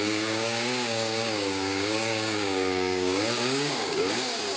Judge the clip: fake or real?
fake